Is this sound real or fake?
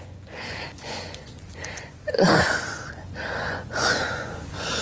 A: fake